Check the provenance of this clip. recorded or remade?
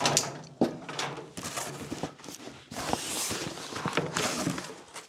recorded